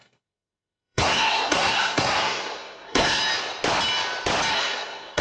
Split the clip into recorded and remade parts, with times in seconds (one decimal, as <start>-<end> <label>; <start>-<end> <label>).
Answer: 0.0-3.2 remade; 3.2-4.5 recorded; 4.5-5.2 remade